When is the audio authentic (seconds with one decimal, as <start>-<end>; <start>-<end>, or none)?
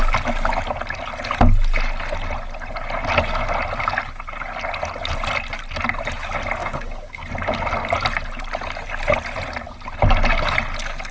0.0-6.6; 7.2-11.1